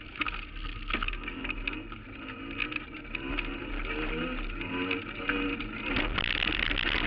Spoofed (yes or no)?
no